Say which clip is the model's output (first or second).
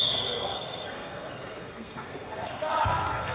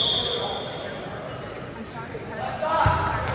first